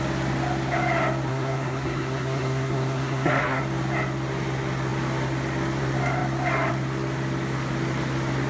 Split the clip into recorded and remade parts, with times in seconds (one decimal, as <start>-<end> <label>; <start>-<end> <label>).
0.0-1.3 recorded; 1.3-3.6 remade; 3.6-8.5 recorded